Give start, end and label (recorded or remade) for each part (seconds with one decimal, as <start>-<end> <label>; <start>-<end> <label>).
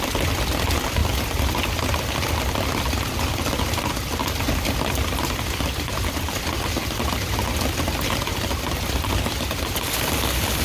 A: 0.0-10.6 recorded